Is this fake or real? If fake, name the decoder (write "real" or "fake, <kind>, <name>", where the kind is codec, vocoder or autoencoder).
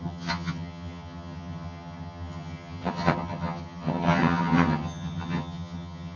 fake, vocoder, HiFi-GAN